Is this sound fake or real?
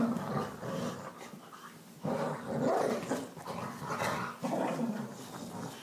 real